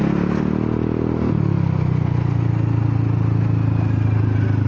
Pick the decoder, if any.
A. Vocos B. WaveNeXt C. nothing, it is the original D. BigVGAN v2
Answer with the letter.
C